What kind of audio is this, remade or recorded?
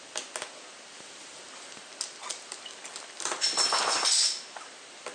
recorded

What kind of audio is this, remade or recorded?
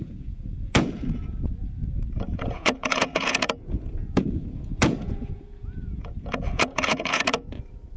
remade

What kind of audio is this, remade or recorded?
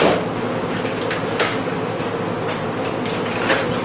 recorded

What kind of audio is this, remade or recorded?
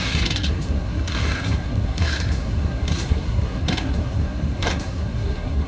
remade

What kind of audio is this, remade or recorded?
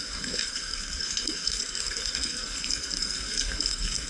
remade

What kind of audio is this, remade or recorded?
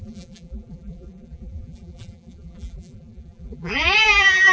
remade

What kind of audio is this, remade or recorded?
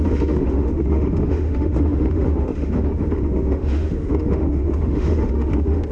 remade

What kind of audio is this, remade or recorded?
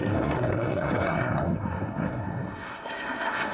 remade